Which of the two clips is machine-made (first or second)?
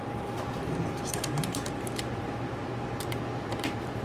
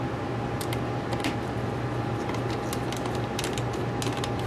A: first